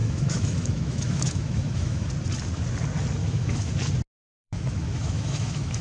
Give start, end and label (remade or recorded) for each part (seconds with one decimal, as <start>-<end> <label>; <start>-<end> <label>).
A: 0.0-2.1 remade; 2.1-3.2 recorded; 3.2-3.7 remade; 3.7-4.4 recorded; 4.4-5.8 remade